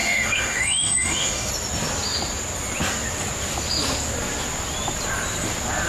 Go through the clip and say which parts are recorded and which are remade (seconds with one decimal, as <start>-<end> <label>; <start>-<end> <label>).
0.0-1.5 remade; 1.5-5.9 recorded